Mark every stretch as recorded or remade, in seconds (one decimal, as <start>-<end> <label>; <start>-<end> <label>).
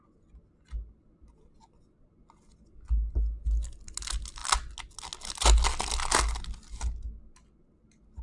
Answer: 0.0-8.2 recorded